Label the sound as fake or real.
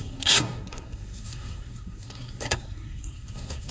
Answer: fake